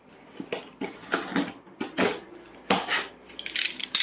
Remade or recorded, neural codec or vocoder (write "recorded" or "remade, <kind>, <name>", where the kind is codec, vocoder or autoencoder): recorded